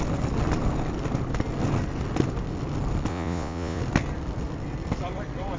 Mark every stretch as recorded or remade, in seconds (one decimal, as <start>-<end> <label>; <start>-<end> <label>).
0.0-3.1 recorded; 3.1-3.8 remade; 3.8-5.6 recorded